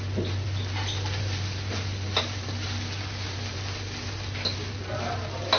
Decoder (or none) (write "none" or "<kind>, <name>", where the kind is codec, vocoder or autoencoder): none